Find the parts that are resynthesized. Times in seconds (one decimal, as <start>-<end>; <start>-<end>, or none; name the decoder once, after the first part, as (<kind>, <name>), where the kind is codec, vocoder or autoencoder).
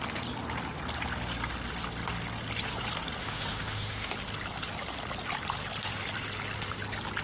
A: 3.2-4.1 (autoencoder, DAC-VAE)